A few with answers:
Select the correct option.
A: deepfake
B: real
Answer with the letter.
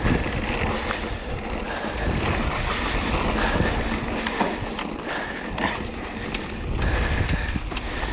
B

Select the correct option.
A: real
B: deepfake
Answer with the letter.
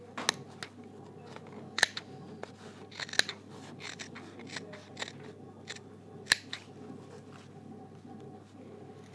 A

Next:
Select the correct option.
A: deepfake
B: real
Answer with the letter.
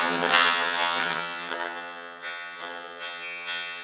A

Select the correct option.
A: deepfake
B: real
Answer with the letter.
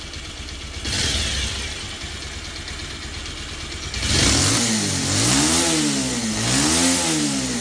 B